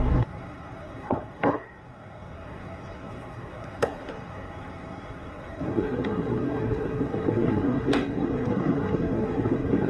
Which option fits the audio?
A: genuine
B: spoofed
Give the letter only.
B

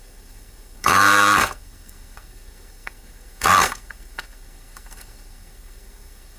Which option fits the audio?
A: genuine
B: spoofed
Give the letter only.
B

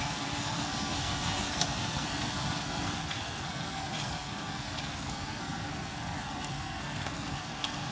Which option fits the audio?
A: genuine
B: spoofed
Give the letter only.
B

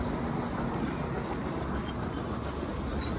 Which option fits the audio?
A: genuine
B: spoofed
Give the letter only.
A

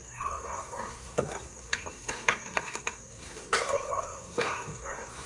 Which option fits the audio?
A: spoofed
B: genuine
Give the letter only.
A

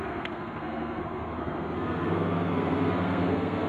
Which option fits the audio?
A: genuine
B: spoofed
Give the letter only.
B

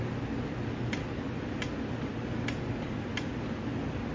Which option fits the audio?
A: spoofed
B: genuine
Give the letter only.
B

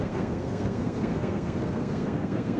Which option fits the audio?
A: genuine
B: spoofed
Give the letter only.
B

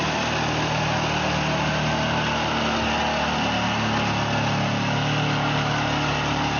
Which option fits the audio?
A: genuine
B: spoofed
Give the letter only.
A